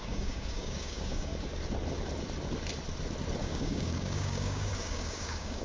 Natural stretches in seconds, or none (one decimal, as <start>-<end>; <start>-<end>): 1.3-3.4